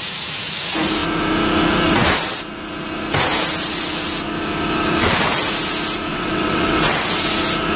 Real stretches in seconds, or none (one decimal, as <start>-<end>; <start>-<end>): 0.0-6.1; 7.0-7.8